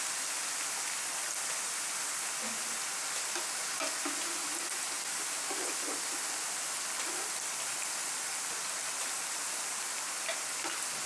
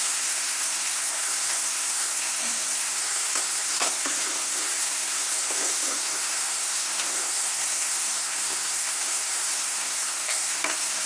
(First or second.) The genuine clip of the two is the first